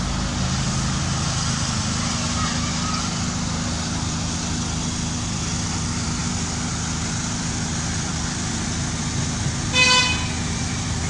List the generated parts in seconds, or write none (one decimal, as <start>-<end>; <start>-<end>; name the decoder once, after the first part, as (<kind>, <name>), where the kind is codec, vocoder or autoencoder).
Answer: none